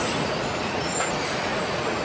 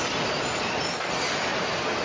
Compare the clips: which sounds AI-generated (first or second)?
first